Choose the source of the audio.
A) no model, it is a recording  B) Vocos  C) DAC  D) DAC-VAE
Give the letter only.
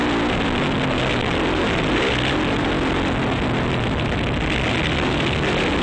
A